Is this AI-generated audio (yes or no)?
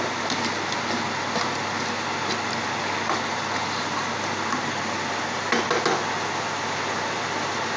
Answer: no